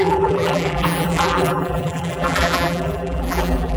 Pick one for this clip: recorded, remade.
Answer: remade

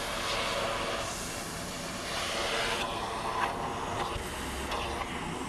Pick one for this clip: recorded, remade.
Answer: recorded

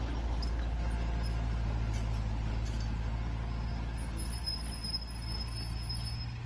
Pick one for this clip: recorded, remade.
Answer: recorded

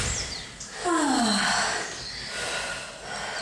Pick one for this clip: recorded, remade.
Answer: recorded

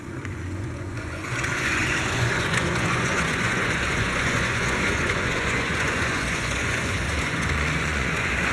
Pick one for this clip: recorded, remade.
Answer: remade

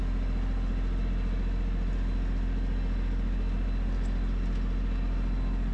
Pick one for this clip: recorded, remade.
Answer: recorded